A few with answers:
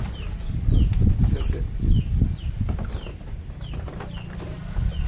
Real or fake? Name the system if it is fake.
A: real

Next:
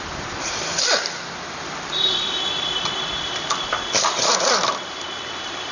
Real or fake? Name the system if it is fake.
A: fake, vocoder, BigVGAN v2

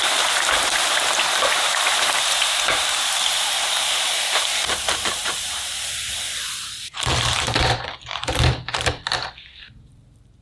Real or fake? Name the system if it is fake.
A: fake, vocoder, BigVGAN v2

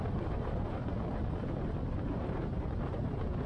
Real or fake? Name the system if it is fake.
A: fake, vocoder, BigVGAN v2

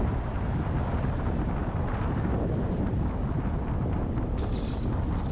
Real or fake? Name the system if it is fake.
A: real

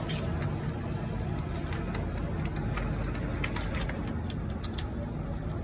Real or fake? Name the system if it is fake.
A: real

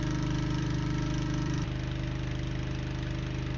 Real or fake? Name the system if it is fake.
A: fake, vocoder, BigVGAN v2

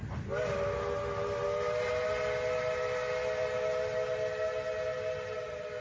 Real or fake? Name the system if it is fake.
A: real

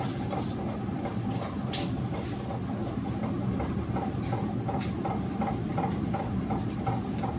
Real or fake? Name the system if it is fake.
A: real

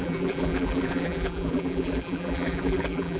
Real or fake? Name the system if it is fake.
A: fake, vocoder, BigVGAN v2